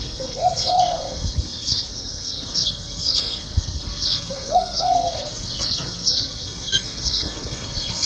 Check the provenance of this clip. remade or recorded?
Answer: remade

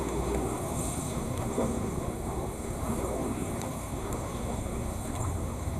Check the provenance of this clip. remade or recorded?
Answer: remade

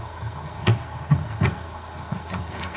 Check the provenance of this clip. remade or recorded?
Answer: remade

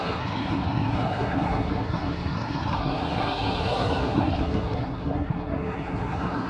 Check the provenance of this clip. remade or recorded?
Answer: remade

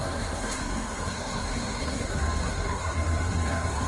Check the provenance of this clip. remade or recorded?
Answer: remade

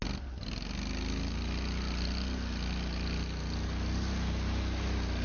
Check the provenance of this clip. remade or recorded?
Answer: recorded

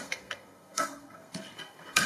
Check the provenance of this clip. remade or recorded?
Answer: remade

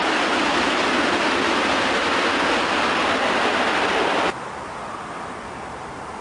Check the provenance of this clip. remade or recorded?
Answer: recorded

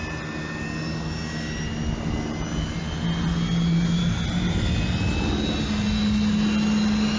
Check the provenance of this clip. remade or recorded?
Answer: recorded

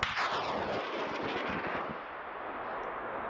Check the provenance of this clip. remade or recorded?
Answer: recorded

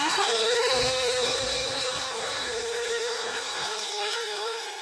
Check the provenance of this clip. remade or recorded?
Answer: remade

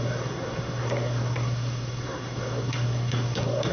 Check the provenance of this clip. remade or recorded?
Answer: remade